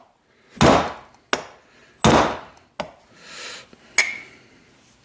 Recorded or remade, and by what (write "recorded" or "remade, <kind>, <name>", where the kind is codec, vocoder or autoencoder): recorded